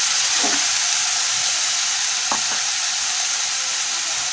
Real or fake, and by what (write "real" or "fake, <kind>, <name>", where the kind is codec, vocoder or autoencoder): real